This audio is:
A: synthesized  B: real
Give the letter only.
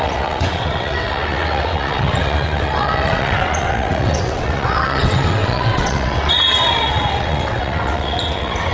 A